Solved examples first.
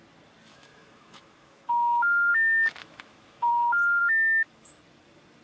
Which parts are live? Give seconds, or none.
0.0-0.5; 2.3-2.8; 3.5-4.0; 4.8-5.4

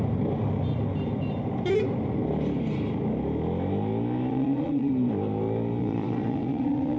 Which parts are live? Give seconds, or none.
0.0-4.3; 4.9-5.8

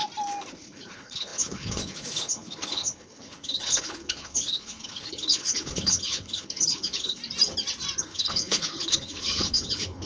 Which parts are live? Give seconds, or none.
0.0-0.5; 7.2-8.0